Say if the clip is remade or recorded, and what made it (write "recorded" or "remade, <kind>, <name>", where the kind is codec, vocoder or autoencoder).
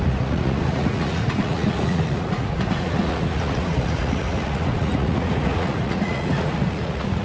remade, vocoder, Vocos